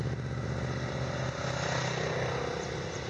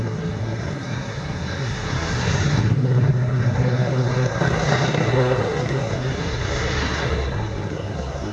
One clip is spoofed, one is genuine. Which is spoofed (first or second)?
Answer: second